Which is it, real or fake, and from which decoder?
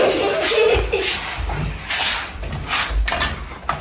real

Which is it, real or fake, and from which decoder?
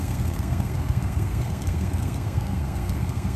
fake, codec, SNAC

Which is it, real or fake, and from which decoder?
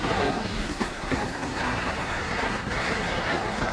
fake, codec, SNAC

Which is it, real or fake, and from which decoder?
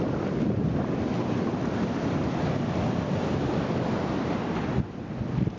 real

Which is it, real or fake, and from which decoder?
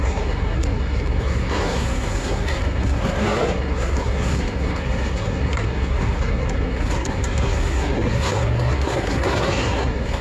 fake, codec, SNAC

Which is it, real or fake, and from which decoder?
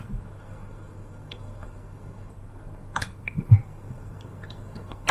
fake, codec, SNAC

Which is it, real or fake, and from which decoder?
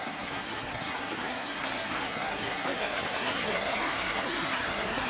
fake, codec, SNAC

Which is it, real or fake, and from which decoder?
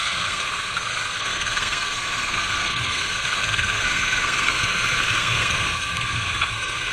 fake, codec, SNAC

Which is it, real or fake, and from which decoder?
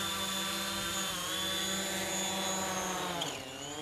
real